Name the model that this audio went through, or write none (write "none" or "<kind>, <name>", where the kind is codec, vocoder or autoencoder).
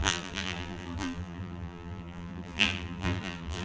vocoder, BigVGAN v2